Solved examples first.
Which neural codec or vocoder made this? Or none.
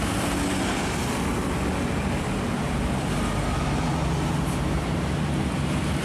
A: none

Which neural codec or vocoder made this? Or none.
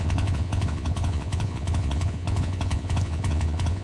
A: vocoder, Vocos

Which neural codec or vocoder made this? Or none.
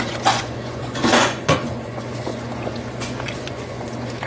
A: vocoder, Vocos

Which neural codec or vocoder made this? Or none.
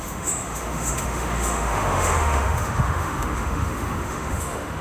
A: autoencoder, DAC-VAE